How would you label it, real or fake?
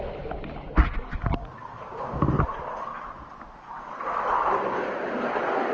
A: real